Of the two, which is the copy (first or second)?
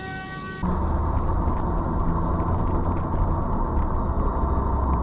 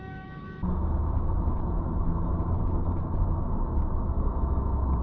second